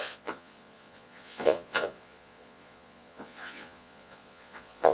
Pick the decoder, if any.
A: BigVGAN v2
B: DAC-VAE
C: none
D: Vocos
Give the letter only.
D